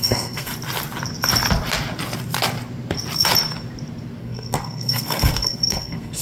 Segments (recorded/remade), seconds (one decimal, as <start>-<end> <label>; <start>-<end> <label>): 0.0-0.5 remade; 0.5-4.2 recorded; 4.2-6.2 remade